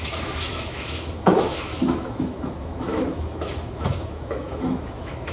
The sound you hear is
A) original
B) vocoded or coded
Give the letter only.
B